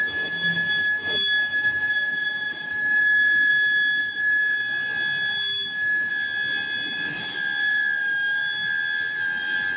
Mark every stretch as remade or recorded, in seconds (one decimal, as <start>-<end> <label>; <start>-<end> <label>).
0.0-3.5 remade; 3.5-4.0 recorded; 4.0-4.4 remade; 4.4-5.3 recorded; 5.3-6.1 remade; 6.1-6.9 recorded; 6.9-9.8 remade